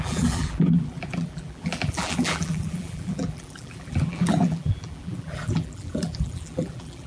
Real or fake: fake